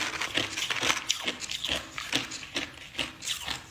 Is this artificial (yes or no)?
no